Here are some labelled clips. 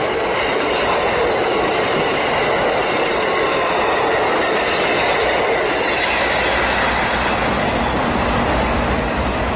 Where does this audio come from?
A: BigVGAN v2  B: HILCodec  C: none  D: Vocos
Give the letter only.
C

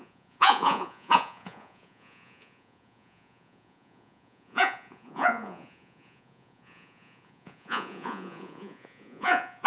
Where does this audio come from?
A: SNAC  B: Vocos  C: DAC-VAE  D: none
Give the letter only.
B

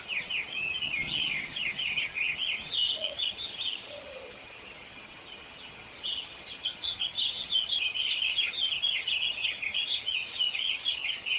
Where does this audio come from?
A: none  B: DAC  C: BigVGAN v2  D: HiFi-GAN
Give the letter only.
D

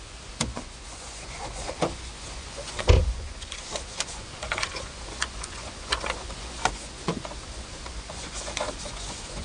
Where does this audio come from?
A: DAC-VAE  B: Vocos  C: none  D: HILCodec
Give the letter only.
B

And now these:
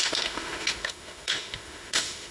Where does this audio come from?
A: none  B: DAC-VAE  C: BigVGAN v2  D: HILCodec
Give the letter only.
B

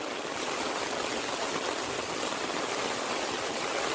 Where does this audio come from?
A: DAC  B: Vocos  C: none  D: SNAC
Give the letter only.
C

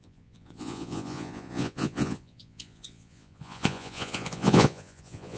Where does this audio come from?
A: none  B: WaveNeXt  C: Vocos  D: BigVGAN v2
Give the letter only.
C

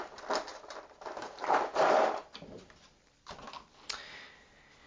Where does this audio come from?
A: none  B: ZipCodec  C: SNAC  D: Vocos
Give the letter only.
A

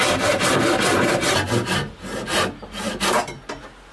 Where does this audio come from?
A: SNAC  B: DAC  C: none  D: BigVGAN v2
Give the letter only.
C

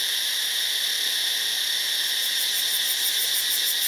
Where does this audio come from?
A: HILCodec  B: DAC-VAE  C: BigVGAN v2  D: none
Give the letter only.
D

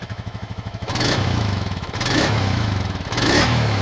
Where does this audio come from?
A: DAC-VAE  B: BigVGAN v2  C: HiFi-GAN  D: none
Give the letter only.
A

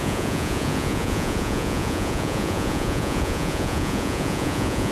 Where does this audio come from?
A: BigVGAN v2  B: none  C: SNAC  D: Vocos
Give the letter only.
D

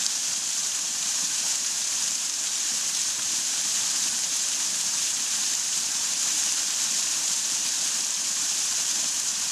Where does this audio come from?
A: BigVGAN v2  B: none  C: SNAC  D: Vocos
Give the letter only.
A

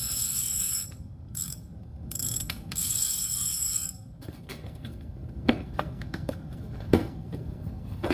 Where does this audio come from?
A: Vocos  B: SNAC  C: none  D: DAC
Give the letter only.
B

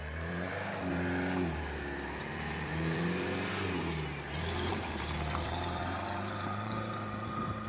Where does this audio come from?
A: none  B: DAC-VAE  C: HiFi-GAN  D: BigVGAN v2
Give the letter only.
D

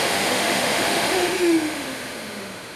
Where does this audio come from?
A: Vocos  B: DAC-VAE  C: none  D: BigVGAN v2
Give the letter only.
B